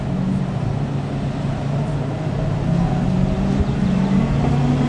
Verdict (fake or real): real